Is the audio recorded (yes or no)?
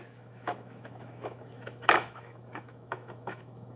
no